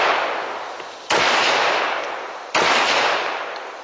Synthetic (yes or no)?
no